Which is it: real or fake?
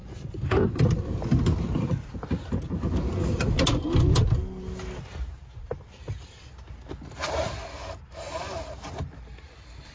real